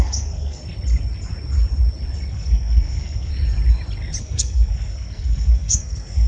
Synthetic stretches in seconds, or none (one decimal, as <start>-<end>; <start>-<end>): 0.0-0.6; 2.3-3.3; 4.2-6.3